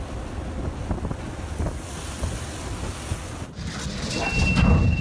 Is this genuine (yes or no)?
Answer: yes